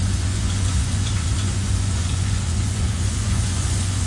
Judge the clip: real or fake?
fake